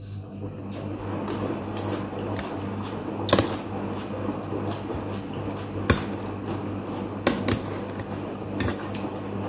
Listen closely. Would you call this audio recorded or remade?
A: recorded